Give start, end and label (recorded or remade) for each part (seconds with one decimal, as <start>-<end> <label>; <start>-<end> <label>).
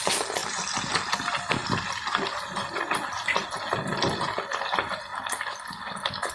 0.0-1.6 recorded; 1.6-4.6 remade; 4.6-5.1 recorded; 5.1-6.3 remade